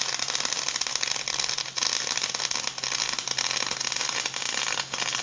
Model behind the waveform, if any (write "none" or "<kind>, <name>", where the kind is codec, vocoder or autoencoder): none